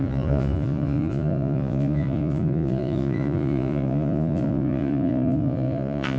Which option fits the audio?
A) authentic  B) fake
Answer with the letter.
B